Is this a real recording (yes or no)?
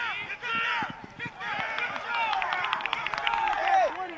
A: yes